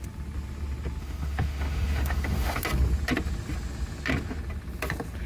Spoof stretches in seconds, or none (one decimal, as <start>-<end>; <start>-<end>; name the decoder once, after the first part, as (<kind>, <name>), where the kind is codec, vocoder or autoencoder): 1.0-2.6 (autoencoder, DAC-VAE)